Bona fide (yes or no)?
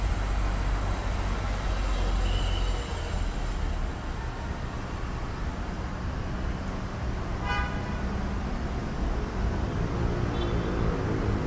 yes